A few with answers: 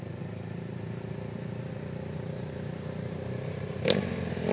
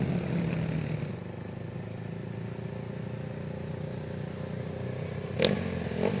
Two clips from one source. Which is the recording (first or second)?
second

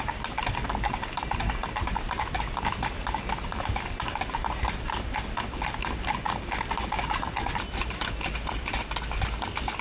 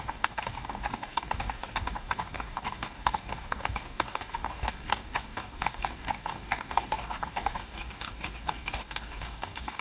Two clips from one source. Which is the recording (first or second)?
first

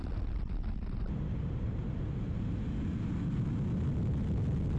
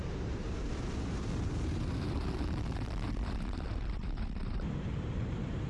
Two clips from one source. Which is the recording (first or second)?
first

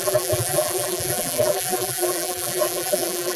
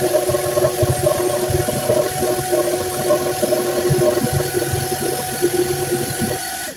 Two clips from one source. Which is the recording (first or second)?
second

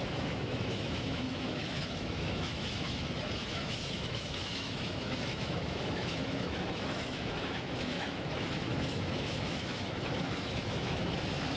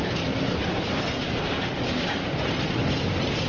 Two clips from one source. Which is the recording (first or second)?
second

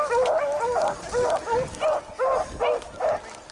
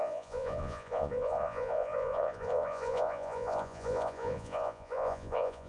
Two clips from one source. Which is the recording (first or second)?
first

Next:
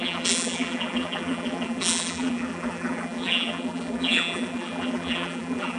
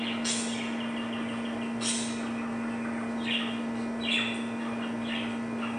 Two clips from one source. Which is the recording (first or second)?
second